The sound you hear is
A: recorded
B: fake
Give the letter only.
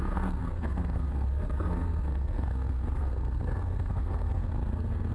B